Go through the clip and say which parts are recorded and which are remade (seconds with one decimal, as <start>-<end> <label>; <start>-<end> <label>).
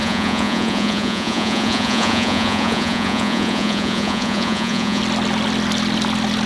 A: 0.0-5.0 remade; 5.0-6.5 recorded